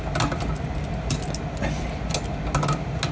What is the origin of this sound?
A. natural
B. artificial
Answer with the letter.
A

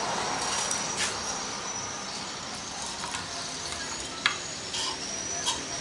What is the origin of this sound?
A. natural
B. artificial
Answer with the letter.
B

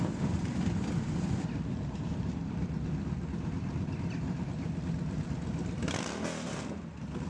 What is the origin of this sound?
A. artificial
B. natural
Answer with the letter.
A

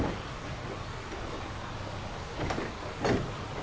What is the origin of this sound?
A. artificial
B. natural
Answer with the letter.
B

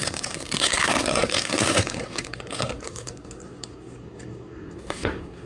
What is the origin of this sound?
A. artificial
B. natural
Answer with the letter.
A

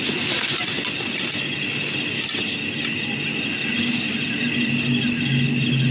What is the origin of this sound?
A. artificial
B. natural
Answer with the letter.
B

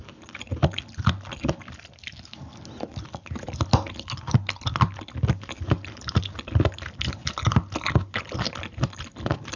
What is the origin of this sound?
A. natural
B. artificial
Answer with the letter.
A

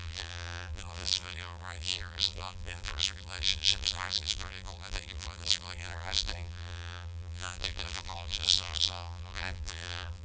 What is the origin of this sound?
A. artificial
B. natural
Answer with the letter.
A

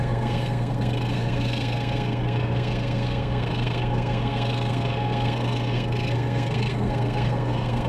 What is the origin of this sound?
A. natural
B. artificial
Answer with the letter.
B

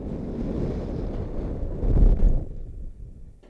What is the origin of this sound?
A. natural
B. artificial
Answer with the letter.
A